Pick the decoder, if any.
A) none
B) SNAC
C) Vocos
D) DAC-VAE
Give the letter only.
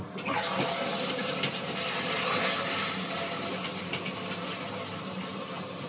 A